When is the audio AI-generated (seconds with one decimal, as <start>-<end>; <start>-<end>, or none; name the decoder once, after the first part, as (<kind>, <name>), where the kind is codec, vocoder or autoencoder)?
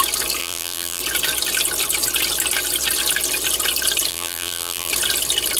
0.4-1.0 (vocoder, BigVGAN v2); 4.1-4.9